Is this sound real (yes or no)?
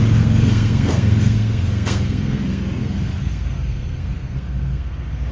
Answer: no